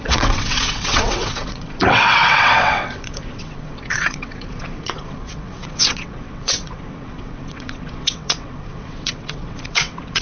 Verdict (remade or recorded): remade